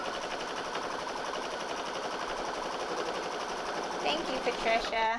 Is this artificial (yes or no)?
yes